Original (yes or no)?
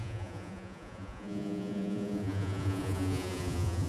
no